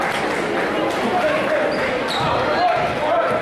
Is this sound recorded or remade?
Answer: recorded